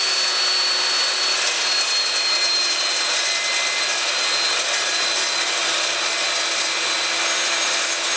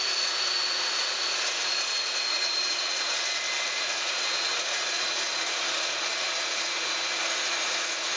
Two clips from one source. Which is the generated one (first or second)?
second